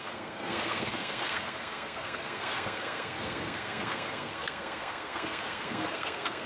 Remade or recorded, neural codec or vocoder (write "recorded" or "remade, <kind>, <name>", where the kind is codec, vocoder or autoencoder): remade, codec, SNAC